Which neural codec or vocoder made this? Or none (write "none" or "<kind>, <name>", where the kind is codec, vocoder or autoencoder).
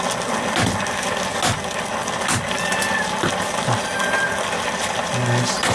none